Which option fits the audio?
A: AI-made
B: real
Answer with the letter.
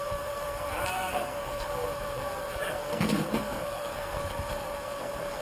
A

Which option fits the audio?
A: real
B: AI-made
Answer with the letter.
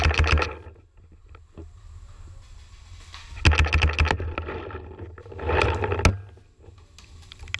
A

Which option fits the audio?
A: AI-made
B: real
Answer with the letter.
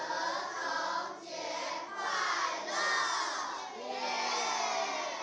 B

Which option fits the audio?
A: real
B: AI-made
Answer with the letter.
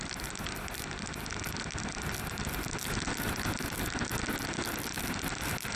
A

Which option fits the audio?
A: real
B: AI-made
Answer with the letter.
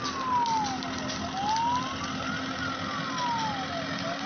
A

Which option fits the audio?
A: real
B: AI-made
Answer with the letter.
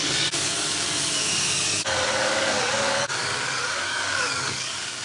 B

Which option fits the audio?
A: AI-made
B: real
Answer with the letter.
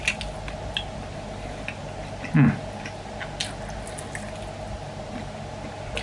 B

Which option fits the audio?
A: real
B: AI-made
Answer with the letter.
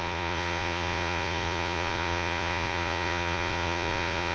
B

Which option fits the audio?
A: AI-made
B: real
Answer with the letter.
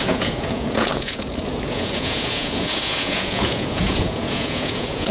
A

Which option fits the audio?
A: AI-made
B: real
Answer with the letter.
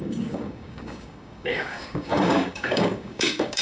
A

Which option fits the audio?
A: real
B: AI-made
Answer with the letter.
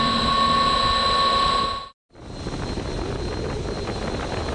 A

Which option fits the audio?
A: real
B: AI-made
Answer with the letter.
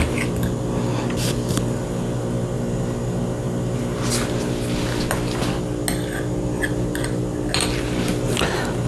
A